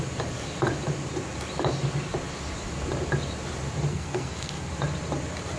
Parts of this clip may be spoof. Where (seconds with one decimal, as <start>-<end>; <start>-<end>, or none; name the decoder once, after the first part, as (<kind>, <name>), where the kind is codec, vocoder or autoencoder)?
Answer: 3.9-4.7 (codec, SNAC)